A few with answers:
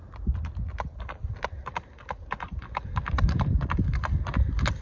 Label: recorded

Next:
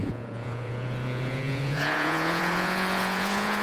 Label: remade